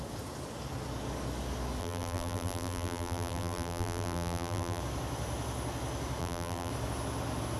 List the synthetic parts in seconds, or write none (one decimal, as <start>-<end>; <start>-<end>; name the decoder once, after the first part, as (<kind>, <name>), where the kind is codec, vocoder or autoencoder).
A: 1.8-4.8 (vocoder, BigVGAN v2); 6.2-6.7